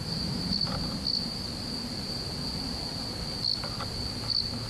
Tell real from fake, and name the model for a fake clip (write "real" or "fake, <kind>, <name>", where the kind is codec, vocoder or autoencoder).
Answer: real